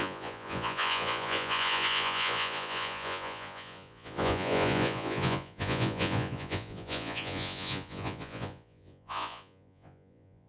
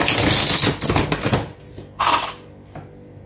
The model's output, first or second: first